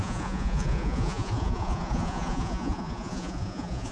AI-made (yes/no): yes